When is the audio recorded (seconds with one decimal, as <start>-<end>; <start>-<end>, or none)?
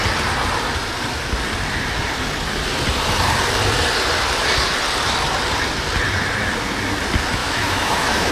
0.0-7.4